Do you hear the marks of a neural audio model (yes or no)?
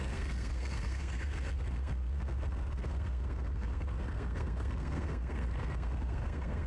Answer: yes